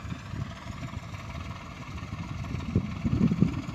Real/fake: real